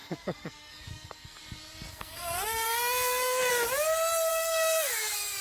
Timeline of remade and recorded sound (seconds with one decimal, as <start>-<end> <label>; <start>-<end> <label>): 0.0-1.4 remade; 1.4-1.9 recorded; 1.9-3.5 remade; 3.5-4.3 recorded; 4.3-5.4 remade